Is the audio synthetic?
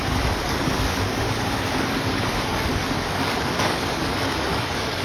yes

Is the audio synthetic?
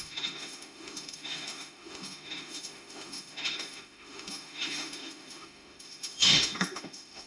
yes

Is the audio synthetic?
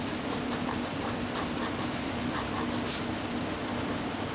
no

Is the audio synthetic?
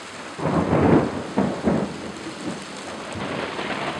no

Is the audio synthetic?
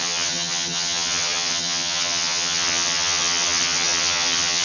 yes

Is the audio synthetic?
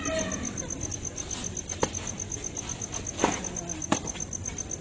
no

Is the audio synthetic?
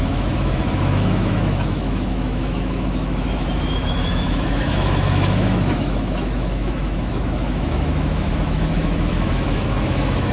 yes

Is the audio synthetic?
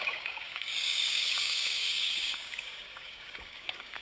yes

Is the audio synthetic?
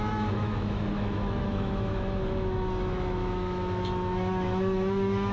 yes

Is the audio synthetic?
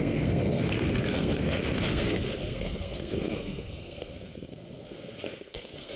yes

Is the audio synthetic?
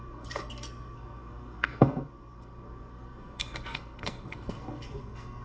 yes